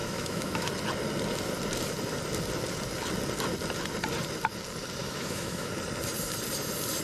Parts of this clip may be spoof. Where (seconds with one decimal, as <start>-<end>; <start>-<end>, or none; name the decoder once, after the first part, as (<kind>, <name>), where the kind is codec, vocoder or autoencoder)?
0.0-0.7 (autoencoder, DAC-VAE); 5.0-5.7